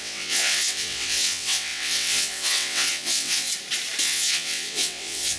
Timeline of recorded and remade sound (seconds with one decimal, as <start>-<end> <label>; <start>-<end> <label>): 0.0-3.5 remade; 3.5-4.0 recorded; 4.0-5.4 remade